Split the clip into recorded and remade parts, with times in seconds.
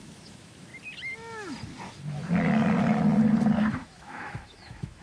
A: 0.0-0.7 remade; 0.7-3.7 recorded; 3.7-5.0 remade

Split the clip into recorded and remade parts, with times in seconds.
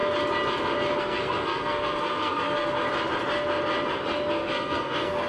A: 0.0-1.0 recorded; 1.0-2.7 remade; 2.7-4.3 recorded; 4.3-5.3 remade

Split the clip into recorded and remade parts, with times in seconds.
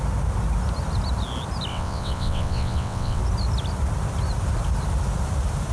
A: 0.0-1.7 recorded; 1.7-3.2 remade; 3.2-5.7 recorded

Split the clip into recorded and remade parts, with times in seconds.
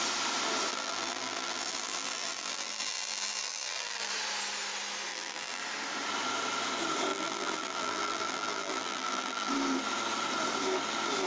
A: 0.0-0.7 recorded; 0.7-4.1 remade; 4.1-5.1 recorded; 5.1-5.6 remade; 5.6-7.1 recorded; 7.1-9.5 remade; 9.5-11.3 recorded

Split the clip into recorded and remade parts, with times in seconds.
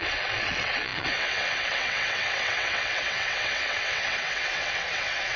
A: 0.0-5.4 remade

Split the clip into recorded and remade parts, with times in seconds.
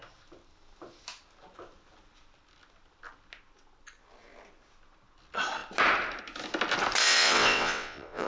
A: 0.0-7.0 recorded; 7.0-8.3 remade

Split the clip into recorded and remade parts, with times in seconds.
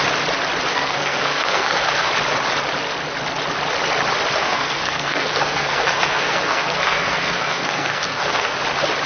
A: 0.0-0.7 recorded; 0.7-2.1 remade; 2.1-4.4 recorded; 4.4-8.6 remade; 8.6-9.1 recorded